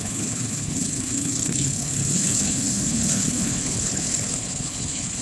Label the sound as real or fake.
fake